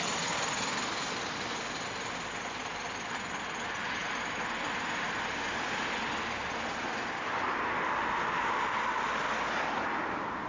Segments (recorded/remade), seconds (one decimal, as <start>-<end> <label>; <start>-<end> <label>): 0.0-10.5 recorded